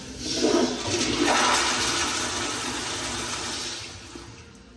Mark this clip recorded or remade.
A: recorded